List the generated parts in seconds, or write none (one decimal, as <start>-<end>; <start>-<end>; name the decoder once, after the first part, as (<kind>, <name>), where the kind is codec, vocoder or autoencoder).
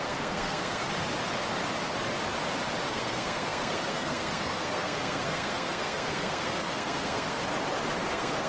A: 0.0-0.9 (codec, SNAC); 2.9-7.4; 8.1-8.5